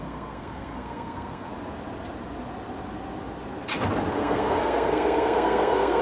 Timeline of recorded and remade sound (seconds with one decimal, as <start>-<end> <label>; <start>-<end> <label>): 0.0-1.5 remade; 1.5-4.1 recorded; 4.1-6.0 remade